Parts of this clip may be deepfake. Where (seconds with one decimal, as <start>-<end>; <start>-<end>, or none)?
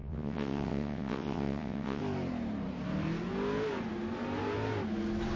0.0-2.0